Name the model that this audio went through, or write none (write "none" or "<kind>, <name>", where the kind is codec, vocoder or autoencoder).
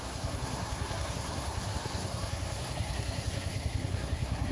codec, SNAC